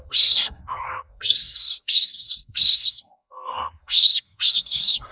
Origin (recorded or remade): remade